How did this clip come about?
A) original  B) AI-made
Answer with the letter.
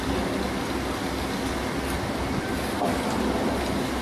A